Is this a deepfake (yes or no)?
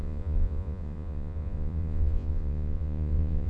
yes